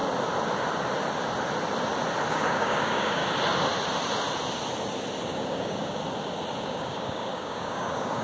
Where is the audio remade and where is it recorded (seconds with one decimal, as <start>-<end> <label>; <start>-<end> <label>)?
0.0-2.3 recorded; 2.3-3.2 remade; 3.2-5.2 recorded; 5.2-6.0 remade; 6.0-6.6 recorded; 6.6-8.2 remade